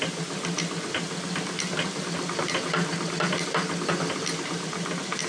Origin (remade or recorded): recorded